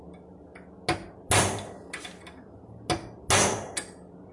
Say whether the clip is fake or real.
real